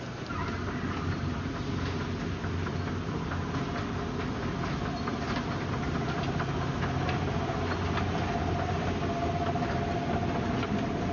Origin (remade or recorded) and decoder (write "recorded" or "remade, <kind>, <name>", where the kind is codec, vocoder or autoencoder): recorded